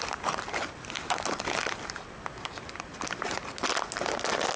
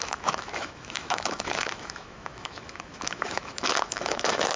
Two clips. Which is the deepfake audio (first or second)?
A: second